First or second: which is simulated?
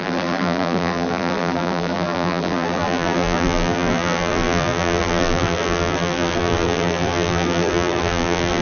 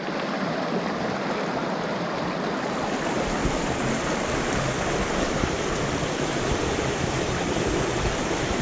first